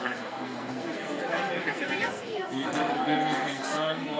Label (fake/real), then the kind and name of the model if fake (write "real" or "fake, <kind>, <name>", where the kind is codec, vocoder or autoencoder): fake, codec, SNAC